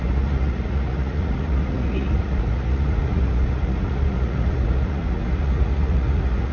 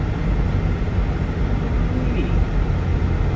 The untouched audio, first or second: second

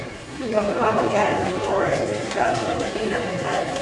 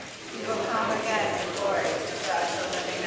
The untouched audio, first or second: second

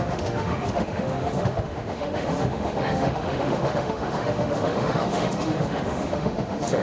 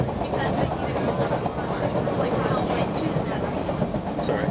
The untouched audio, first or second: second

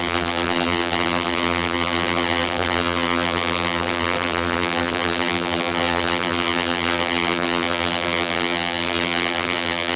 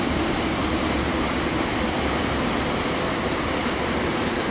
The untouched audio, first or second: second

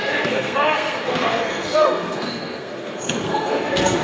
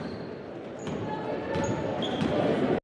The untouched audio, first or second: second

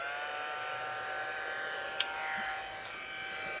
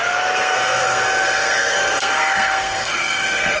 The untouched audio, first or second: first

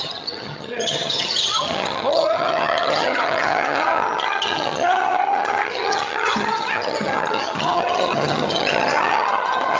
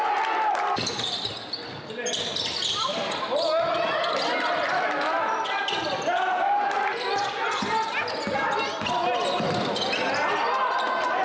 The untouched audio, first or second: second